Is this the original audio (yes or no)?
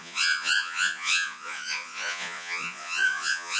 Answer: no